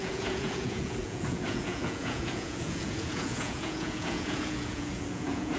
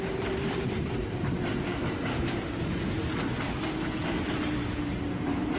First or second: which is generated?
first